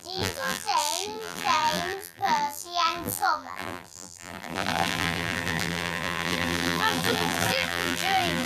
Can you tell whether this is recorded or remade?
remade